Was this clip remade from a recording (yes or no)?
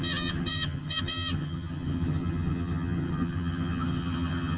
yes